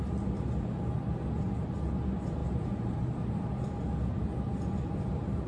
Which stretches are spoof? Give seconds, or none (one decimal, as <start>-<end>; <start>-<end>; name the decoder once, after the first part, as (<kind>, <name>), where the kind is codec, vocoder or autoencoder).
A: 2.4-4.2 (vocoder, BigVGAN v2)